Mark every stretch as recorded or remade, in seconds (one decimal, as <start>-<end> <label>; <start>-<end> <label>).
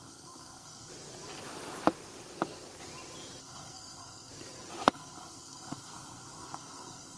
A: 0.0-0.9 remade; 0.9-3.4 recorded; 3.4-4.3 remade; 4.3-4.9 recorded; 4.9-7.2 remade